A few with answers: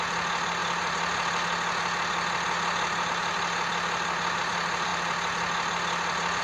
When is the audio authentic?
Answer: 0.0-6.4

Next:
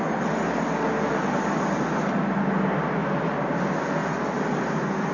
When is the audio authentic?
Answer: 0.0-4.0